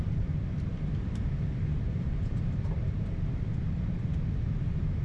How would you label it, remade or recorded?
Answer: remade